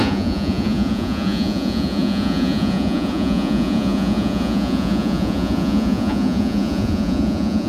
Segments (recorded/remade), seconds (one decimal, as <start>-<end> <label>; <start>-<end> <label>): 0.0-7.7 remade